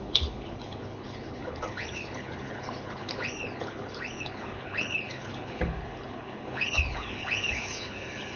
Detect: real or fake fake